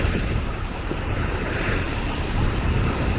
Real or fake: fake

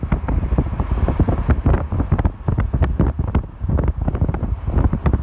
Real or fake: real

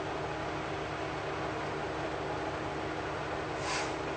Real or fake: real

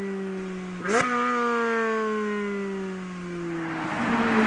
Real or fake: real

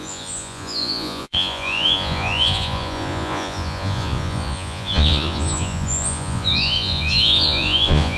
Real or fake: fake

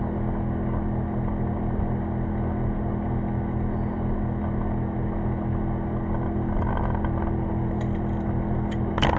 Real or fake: real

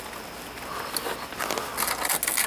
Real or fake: real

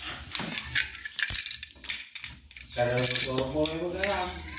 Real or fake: real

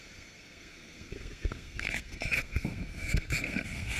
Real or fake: fake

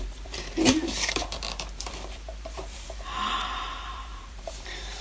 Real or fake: fake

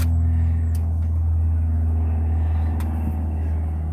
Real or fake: real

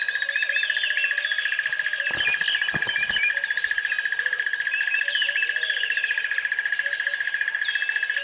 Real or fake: real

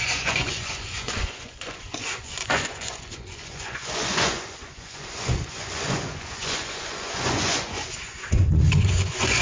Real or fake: fake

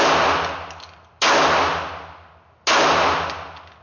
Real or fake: real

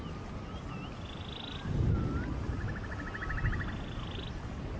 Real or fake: real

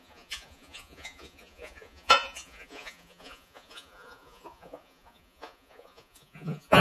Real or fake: fake